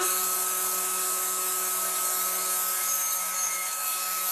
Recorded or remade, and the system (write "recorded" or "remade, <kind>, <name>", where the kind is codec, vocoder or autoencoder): remade, codec, DAC